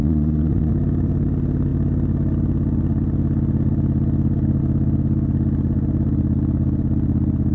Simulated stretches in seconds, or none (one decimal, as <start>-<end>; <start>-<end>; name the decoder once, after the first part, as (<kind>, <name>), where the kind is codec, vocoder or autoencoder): 0.0-0.7 (vocoder, Vocos)